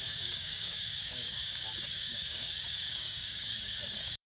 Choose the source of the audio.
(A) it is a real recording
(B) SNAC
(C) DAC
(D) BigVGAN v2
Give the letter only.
C